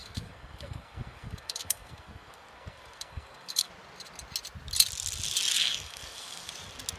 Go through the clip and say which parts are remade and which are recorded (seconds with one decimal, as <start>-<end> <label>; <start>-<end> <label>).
0.0-3.7 remade; 3.7-5.5 recorded; 5.5-6.5 remade; 6.5-7.0 recorded